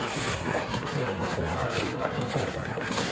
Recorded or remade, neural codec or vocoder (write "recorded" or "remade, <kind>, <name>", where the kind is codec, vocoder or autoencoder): remade, codec, SNAC